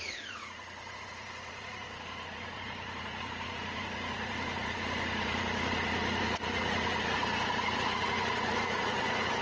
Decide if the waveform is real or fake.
fake